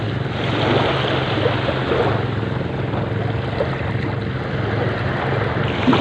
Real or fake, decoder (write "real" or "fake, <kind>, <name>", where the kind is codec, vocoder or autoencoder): real